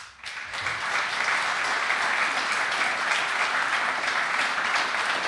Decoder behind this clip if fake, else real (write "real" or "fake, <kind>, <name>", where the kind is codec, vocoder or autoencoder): real